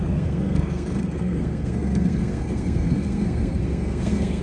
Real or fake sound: fake